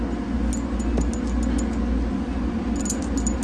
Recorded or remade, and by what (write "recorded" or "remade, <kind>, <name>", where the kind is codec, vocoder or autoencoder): recorded